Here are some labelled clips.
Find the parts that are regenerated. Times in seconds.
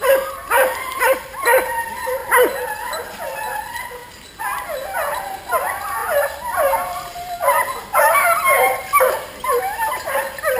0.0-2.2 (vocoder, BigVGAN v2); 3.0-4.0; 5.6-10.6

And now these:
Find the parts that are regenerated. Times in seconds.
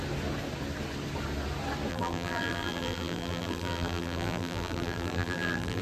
1.9-5.8 (vocoder, BigVGAN v2)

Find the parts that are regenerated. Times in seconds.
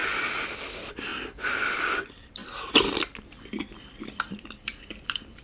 0.6-1.1 (vocoder, BigVGAN v2); 1.6-2.4; 3.9-5.4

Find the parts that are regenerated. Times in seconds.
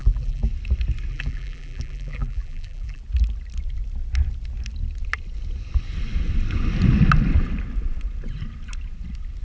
0.0-0.5 (vocoder, BigVGAN v2); 1.1-3.0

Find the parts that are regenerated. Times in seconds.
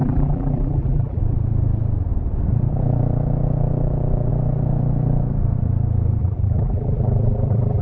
0.0-1.2 (vocoder, BigVGAN v2); 6.2-7.8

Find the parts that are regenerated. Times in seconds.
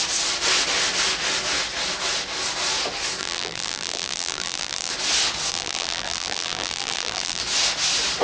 3.2-4.9 (vocoder, BigVGAN v2); 5.5-7.4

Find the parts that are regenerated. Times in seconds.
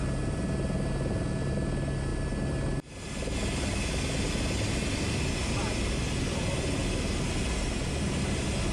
none